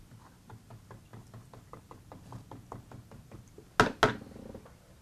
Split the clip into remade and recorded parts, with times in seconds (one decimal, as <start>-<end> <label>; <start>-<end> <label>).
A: 0.0-5.0 recorded